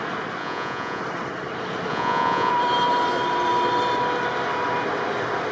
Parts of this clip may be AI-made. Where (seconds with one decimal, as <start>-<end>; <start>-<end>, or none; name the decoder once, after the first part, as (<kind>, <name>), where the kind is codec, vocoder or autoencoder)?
0.4-1.0 (vocoder, Vocos); 1.9-2.5